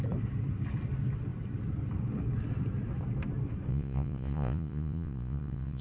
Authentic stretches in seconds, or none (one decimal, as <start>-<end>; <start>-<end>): 0.0-3.7